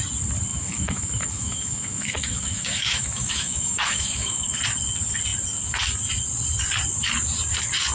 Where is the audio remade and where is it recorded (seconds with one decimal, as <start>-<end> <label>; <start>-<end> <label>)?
0.0-0.5 recorded; 0.5-4.6 remade; 4.6-7.9 recorded

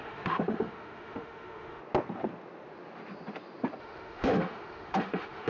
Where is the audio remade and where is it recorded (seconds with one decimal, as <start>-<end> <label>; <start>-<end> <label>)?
0.0-1.8 remade; 1.8-3.8 recorded; 3.8-5.5 remade

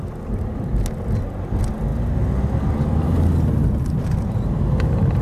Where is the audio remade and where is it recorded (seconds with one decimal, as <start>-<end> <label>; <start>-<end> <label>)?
0.0-5.2 recorded

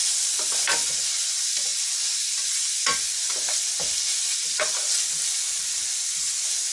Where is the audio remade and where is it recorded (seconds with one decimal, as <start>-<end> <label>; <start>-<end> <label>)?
0.0-6.7 recorded

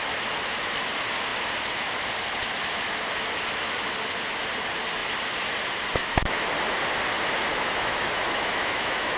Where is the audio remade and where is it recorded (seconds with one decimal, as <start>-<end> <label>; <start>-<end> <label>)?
0.0-6.0 recorded; 6.0-6.5 remade; 6.5-7.5 recorded; 7.5-9.2 remade

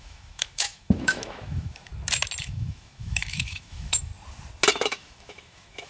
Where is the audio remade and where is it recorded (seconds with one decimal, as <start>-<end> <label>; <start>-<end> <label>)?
0.0-1.9 remade; 1.9-2.4 recorded; 2.4-4.1 remade; 4.1-4.7 recorded; 4.7-5.9 remade